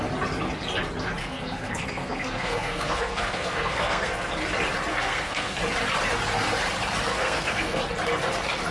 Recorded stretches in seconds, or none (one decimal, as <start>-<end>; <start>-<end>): 0.0-1.2; 4.3-4.9; 5.6-7.1; 7.8-8.7